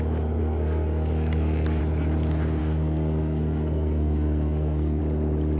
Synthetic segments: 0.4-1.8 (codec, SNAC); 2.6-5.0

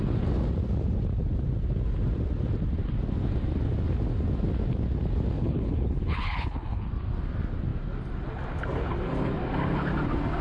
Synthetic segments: 5.3-6.9 (codec, HILCodec)